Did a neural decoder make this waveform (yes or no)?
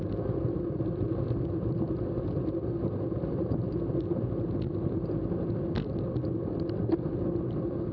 no